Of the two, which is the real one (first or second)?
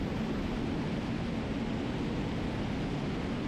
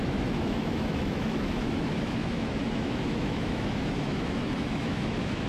first